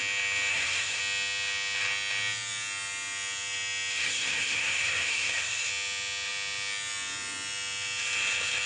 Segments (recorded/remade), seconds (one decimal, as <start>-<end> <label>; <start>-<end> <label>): 0.0-0.5 recorded; 0.5-1.0 remade; 1.0-4.0 recorded; 4.0-5.7 remade; 5.7-8.7 recorded